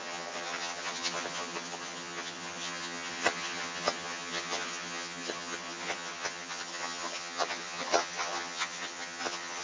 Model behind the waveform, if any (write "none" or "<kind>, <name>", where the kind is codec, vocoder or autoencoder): vocoder, HiFi-GAN